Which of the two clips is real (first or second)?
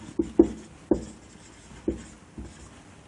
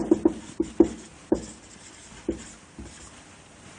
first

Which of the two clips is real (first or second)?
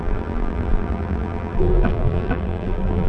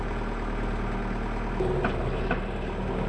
second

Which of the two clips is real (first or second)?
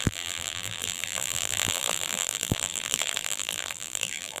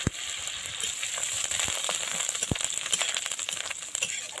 second